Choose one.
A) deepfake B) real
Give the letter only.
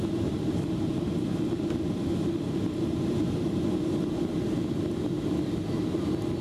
B